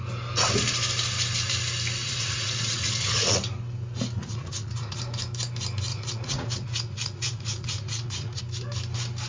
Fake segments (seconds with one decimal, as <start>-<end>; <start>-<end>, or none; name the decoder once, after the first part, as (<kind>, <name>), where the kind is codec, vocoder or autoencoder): 2.0-3.4 (vocoder, Vocos); 4.2-5.0; 5.9-8.4